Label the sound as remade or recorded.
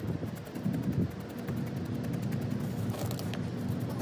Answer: recorded